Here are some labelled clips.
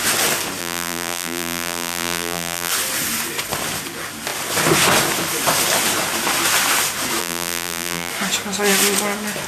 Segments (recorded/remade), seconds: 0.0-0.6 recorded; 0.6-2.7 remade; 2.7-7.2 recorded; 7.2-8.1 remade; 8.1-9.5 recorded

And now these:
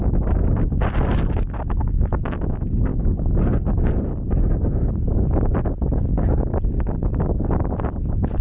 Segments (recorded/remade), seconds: 0.0-8.4 recorded

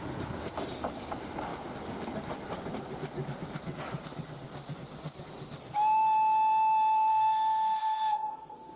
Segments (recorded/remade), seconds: 0.0-7.1 recorded; 7.1-8.8 remade